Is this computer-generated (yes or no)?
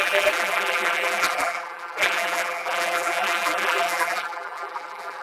yes